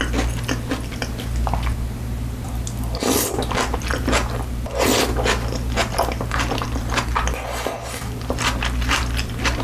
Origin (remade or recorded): recorded